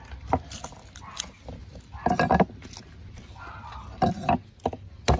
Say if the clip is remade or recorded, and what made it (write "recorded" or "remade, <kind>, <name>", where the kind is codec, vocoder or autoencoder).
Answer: recorded